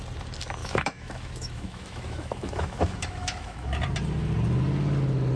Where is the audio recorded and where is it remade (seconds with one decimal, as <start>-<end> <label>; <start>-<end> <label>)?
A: 0.0-0.6 recorded; 0.6-3.8 remade; 3.8-5.4 recorded